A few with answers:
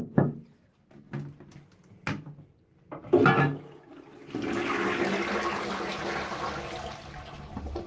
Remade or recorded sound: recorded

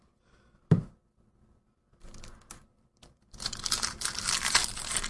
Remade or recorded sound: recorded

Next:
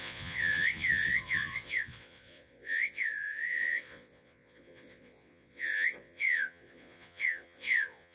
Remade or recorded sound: remade